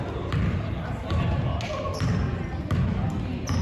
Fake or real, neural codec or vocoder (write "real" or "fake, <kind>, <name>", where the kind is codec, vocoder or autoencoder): real